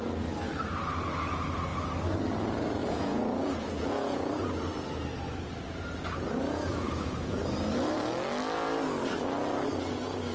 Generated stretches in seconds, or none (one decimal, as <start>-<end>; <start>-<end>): 2.8-4.5; 6.7-7.4